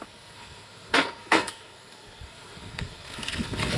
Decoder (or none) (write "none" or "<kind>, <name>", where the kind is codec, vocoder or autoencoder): codec, SNAC